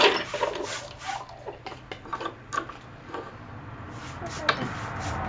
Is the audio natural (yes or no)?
yes